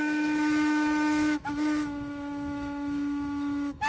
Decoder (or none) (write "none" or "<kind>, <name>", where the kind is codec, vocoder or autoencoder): autoencoder, DAC-VAE